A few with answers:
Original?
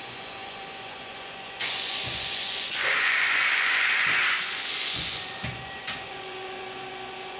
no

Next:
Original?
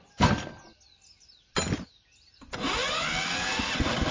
yes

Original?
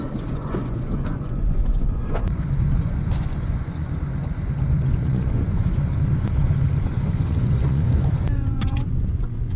no